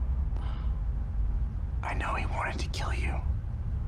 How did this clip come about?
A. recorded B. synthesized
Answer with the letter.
A